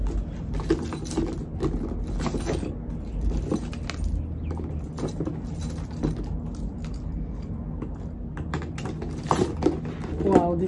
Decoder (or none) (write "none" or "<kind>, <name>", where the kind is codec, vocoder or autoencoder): none